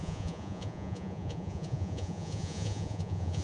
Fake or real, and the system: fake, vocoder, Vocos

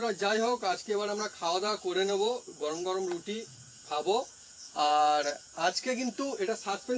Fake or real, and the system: fake, vocoder, Vocos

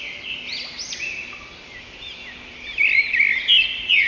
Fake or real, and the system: real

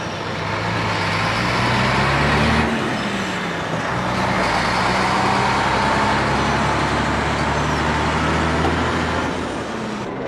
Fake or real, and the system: real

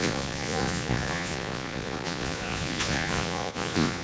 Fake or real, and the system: fake, vocoder, Vocos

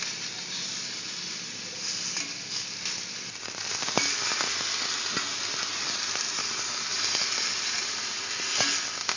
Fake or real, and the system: real